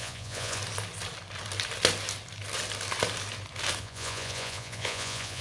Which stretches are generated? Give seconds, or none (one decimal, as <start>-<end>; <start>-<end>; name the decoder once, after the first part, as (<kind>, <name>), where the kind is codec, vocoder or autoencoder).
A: 0.0-0.6 (vocoder, Vocos); 3.8-5.4